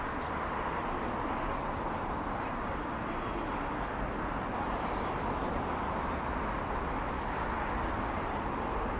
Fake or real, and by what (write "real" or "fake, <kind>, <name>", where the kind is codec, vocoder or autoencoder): real